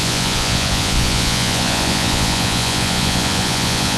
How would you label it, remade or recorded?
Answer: remade